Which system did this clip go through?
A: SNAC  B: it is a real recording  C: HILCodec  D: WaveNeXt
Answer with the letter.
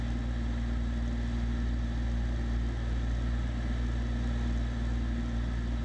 B